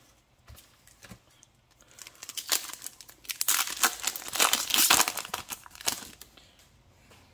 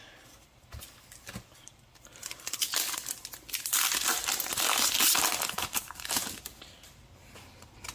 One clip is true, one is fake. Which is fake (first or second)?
second